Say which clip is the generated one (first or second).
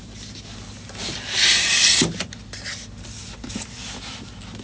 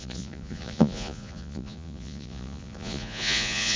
second